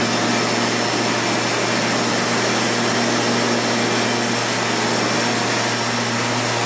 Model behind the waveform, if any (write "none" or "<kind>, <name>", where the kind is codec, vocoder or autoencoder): none